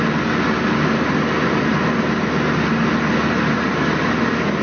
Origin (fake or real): real